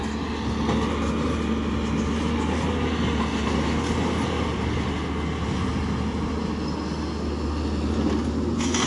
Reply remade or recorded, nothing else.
recorded